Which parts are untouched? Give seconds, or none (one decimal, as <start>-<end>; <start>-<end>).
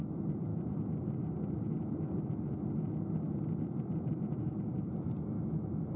0.0-6.0